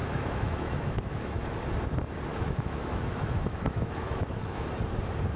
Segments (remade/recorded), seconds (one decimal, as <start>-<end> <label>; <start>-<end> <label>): 0.0-1.4 remade; 1.4-2.3 recorded; 2.3-4.7 remade; 4.7-5.4 recorded